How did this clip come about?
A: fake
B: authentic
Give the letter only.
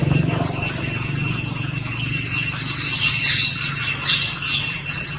B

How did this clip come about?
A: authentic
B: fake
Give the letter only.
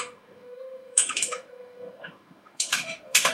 B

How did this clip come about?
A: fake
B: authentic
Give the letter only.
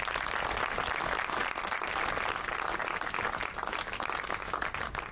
B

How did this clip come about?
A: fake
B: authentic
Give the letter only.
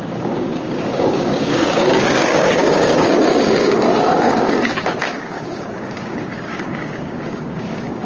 A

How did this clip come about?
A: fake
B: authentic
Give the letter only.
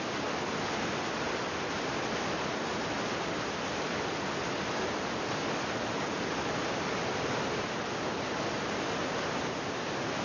B